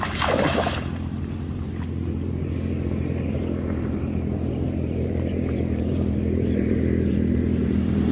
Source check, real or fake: fake